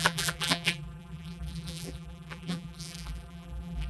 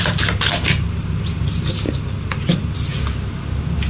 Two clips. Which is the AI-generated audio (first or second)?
first